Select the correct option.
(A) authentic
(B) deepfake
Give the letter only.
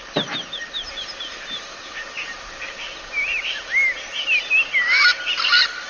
A